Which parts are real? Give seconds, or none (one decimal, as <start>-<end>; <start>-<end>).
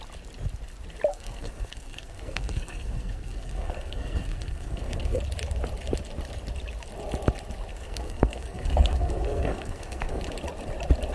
0.0-1.1; 5.2-7.7; 10.2-11.1